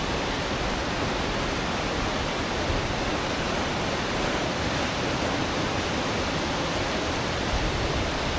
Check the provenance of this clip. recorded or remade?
recorded